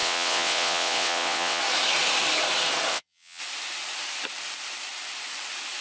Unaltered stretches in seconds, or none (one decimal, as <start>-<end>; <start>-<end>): 1.6-2.9; 3.4-5.8